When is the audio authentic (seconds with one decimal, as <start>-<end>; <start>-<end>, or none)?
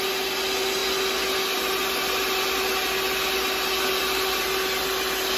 0.0-5.4